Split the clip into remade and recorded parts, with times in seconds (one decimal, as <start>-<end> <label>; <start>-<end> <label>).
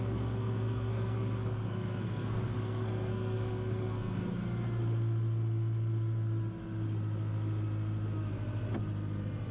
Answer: 0.0-4.2 remade; 4.2-9.5 recorded